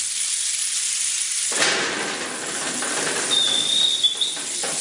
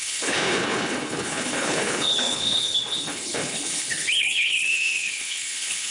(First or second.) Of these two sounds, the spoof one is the second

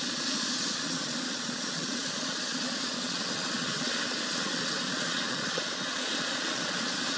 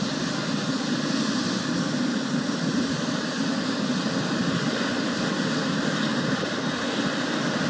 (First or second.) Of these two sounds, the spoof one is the first